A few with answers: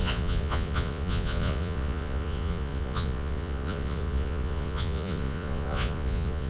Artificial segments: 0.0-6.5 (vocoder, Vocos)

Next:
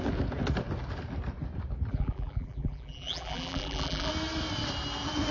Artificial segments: 1.9-4.1 (vocoder, BigVGAN v2)

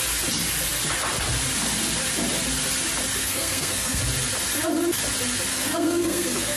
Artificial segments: 3.2-4.0 (codec, SNAC); 5.5-6.6

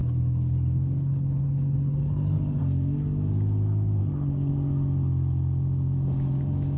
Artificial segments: 0.0-2.6 (codec, HILCodec); 4.0-4.5

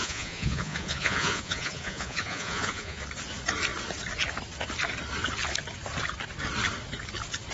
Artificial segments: 0.0-3.0 (vocoder, Vocos)

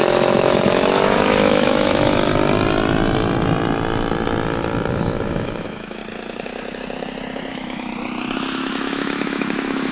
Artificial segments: 0.0-2.3 (autoencoder, DAC-VAE); 4.9-6.0; 7.5-7.9; 8.6-9.9

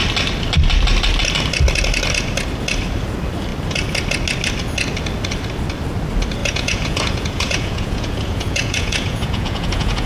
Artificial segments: 6.4-10.1 (vocoder, Vocos)

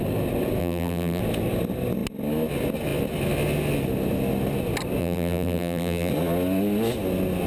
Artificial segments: 0.6-1.2 (vocoder, BigVGAN v2); 5.0-6.1